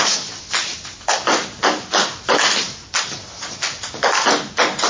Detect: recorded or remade recorded